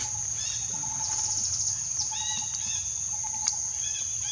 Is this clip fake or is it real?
real